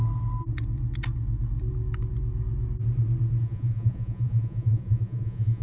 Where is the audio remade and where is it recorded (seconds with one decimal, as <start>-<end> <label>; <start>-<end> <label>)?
0.0-3.4 recorded; 3.4-5.6 remade

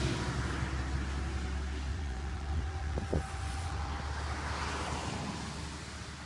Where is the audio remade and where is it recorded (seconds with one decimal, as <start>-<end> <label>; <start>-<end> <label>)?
0.0-1.9 recorded; 1.9-3.9 remade; 3.9-6.3 recorded